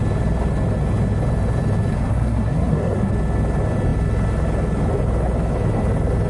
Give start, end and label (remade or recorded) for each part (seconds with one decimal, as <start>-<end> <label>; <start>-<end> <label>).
0.0-1.9 recorded; 1.9-3.1 remade; 3.1-6.3 recorded